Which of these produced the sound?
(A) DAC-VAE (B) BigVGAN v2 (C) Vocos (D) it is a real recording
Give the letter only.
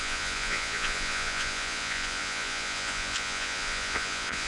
C